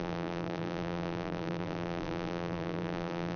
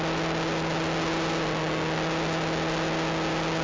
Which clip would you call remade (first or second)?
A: first